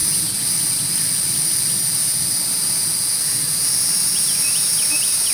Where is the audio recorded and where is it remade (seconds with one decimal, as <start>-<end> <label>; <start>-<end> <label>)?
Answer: 0.0-5.3 recorded